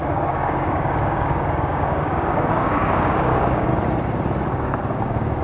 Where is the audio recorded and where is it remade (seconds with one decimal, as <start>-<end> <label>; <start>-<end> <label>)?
0.0-3.7 remade; 3.7-4.5 recorded; 4.5-5.4 remade